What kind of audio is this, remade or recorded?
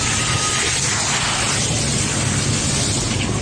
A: recorded